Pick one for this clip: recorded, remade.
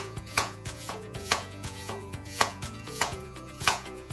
remade